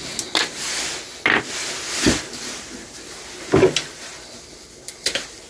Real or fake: real